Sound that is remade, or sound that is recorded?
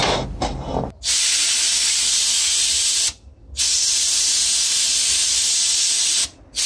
recorded